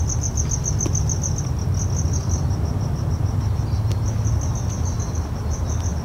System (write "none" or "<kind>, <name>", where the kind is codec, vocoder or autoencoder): none